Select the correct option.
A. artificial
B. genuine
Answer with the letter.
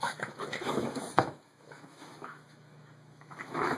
A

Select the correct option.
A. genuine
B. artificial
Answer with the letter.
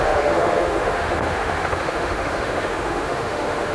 B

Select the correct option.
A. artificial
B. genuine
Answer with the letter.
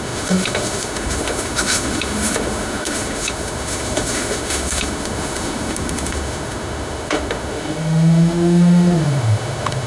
A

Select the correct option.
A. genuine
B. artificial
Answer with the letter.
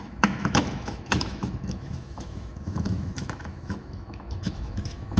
B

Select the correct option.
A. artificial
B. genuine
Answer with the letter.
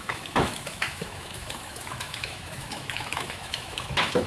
A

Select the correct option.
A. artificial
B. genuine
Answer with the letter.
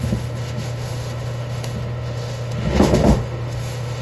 A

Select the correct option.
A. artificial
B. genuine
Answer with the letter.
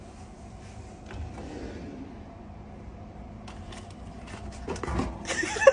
B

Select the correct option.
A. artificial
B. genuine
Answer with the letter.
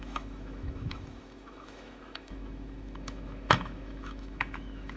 A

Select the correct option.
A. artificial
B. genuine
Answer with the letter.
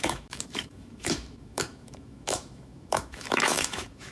A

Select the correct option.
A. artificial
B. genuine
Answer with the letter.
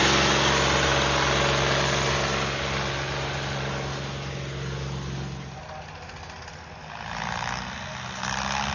B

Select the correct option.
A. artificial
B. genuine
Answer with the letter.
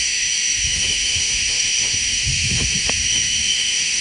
A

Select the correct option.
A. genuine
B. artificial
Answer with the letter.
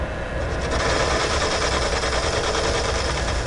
A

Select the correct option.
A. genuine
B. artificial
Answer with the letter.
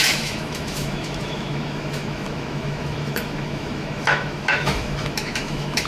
B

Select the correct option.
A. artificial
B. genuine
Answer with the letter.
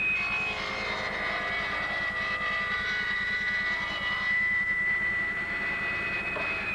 B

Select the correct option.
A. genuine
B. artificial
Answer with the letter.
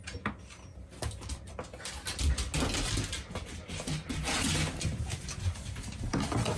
A